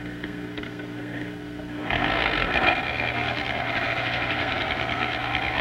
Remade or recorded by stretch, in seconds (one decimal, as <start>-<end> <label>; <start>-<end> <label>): 0.0-5.6 remade